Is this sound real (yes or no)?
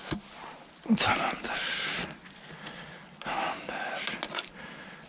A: yes